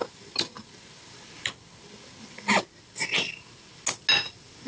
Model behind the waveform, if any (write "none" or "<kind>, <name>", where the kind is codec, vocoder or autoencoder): none